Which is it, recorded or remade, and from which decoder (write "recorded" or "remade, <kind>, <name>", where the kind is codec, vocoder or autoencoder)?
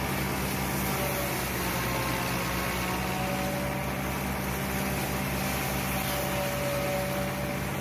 recorded